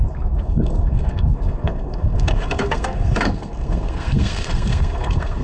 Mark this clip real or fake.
fake